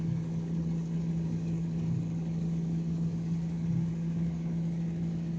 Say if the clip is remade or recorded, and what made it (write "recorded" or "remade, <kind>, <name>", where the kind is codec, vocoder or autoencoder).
remade, codec, DAC